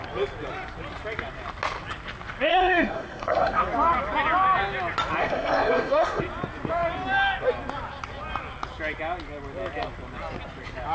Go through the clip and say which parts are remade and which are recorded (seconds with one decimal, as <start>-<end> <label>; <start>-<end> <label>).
0.0-2.5 recorded; 2.5-3.6 remade; 3.6-5.2 recorded; 5.2-6.2 remade; 6.2-10.9 recorded